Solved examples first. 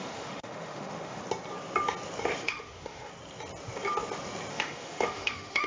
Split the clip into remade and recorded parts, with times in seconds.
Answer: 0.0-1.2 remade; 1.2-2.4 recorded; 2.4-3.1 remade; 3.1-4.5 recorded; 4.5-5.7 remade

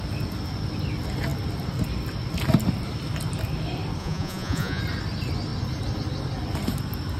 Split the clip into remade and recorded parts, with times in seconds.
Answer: 0.0-4.0 recorded; 4.0-4.8 remade; 4.8-7.2 recorded

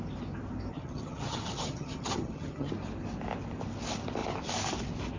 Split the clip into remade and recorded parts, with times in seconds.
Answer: 0.0-0.7 recorded; 0.7-2.7 remade; 2.7-5.2 recorded